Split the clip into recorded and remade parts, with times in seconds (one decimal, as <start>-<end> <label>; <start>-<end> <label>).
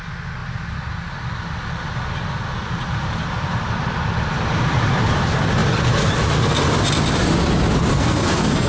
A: 0.0-7.9 recorded; 7.9-8.7 remade